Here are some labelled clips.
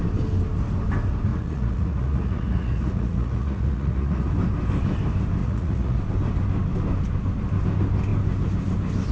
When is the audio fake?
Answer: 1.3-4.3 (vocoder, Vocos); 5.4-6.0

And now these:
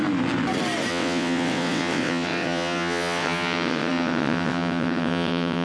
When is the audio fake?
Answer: 0.9-5.6 (vocoder, WaveNeXt)

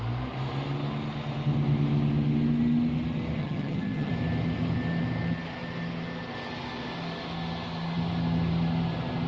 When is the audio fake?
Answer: 3.4-4.1 (vocoder, HiFi-GAN)

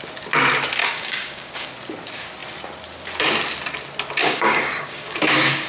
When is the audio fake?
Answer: 0.8-1.7 (codec, DAC); 4.2-5.7

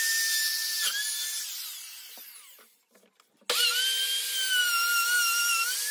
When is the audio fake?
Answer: 4.6-5.4 (vocoder, BigVGAN v2)

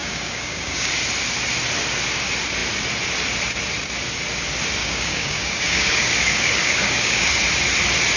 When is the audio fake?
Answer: 0.0-0.9 (codec, DAC); 4.8-7.4